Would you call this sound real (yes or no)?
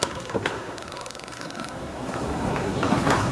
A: no